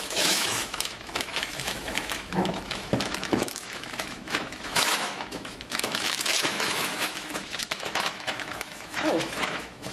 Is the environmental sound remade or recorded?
remade